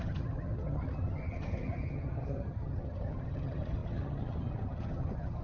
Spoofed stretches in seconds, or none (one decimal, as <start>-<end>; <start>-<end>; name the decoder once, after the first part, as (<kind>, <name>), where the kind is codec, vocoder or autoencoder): 0.0-5.4 (vocoder, HiFi-GAN)